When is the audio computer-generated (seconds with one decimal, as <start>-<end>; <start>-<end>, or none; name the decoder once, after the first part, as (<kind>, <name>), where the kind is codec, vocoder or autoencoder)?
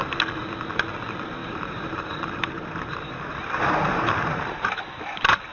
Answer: 1.4-4.7 (vocoder, BigVGAN v2)